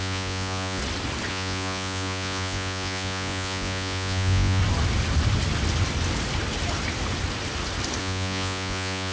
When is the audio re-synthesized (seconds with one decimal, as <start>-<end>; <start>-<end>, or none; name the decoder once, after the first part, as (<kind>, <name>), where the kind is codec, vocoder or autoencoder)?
0.0-0.8 (vocoder, Vocos); 1.3-4.6; 8.0-9.1